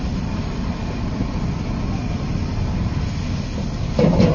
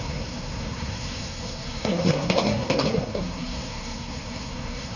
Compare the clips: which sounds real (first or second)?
first